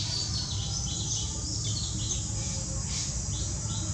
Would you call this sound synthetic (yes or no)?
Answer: no